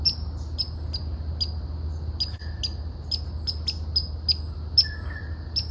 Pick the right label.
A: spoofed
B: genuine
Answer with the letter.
B